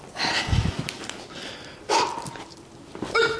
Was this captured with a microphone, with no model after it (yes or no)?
yes